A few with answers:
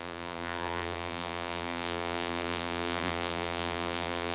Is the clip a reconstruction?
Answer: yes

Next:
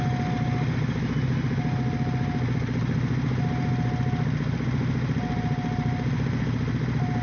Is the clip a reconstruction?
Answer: no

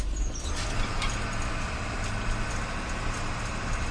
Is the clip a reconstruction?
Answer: no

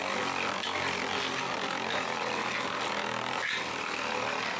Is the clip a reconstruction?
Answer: no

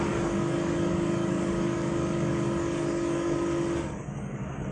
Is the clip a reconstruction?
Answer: yes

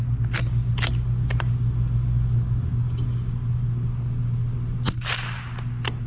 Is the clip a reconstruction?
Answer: no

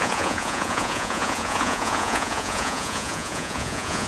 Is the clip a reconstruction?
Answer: yes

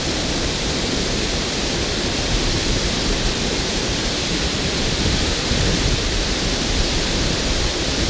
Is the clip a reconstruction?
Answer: yes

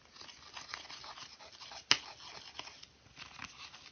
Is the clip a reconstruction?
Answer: no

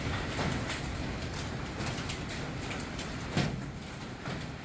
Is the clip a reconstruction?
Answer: no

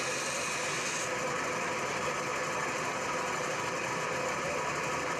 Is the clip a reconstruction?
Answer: no